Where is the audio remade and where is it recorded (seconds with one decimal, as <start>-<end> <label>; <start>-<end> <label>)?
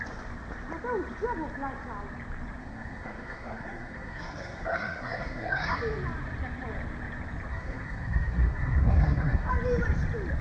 0.0-2.6 recorded; 2.6-5.8 remade; 5.8-7.5 recorded; 7.5-9.5 remade; 9.5-10.4 recorded